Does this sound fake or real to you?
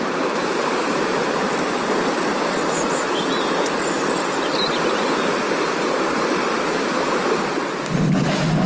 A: real